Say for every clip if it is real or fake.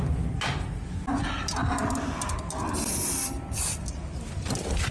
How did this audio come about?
real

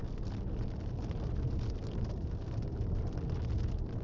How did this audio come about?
real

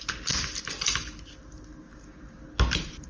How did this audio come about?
real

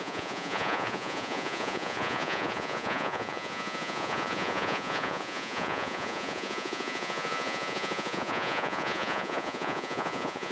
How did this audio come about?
fake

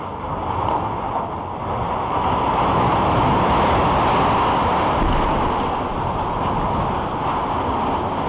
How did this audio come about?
real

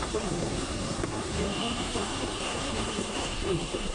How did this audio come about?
fake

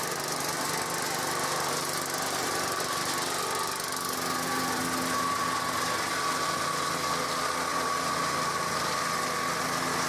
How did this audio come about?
real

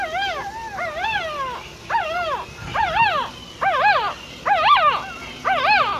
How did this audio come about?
real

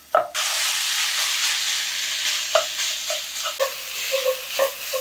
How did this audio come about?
real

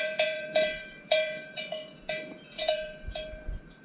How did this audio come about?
fake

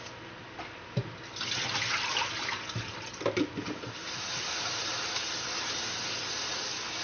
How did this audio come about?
real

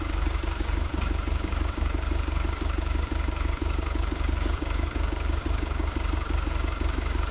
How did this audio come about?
fake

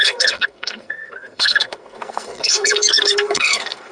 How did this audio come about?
fake